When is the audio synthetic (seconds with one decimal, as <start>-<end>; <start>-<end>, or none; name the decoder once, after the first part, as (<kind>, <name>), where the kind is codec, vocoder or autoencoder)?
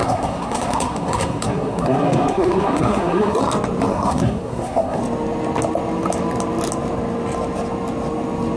0.0-3.4 (codec, SNAC); 3.9-5.0